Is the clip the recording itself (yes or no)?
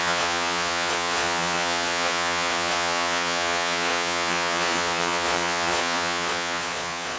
no